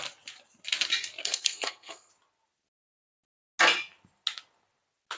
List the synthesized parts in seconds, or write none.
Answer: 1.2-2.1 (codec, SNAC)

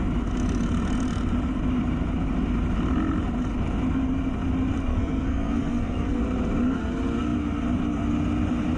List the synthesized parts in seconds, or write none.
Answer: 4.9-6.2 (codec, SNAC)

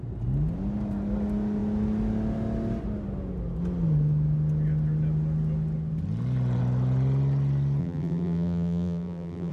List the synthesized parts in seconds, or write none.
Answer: 7.8-9.5 (vocoder, BigVGAN v2)